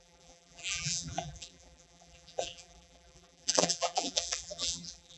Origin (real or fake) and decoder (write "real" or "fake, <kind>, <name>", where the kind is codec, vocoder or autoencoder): fake, vocoder, BigVGAN v2